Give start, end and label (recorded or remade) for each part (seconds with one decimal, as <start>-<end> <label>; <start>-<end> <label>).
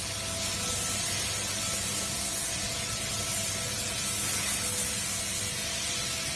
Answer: 0.0-6.4 recorded